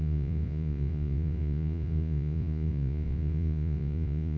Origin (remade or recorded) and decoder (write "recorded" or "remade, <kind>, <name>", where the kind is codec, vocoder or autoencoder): remade, vocoder, Vocos